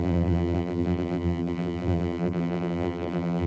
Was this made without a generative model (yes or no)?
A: no